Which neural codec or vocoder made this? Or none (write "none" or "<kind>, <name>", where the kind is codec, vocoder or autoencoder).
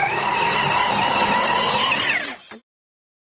none